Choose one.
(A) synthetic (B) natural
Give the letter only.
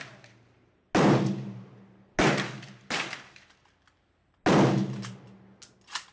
B